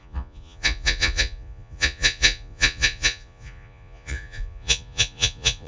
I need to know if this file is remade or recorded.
remade